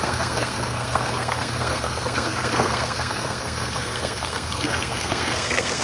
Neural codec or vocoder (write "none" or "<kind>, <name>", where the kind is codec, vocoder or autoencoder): codec, SNAC